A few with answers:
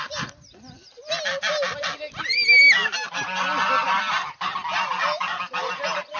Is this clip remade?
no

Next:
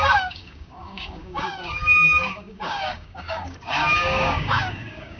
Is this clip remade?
yes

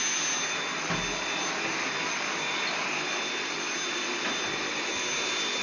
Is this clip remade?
no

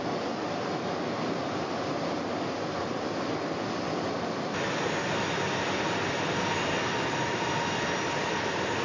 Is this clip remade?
no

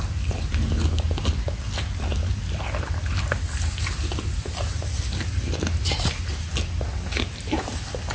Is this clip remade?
no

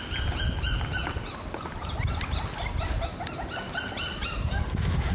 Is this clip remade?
no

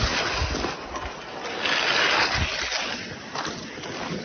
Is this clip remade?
no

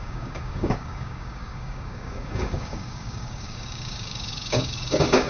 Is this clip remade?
yes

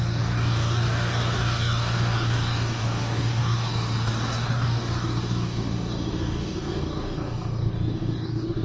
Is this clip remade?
yes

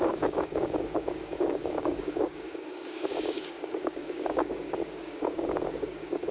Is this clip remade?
yes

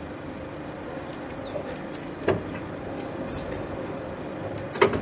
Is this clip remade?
no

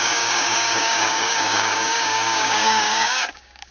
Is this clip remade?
yes